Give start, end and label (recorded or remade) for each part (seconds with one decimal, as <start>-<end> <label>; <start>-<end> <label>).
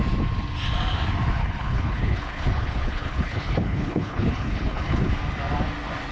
0.0-1.4 recorded; 1.4-5.1 remade; 5.1-6.1 recorded